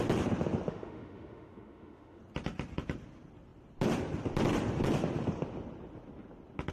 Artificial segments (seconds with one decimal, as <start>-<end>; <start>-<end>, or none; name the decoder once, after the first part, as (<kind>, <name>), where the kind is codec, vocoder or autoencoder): 0.7-2.2 (autoencoder, DAC-VAE)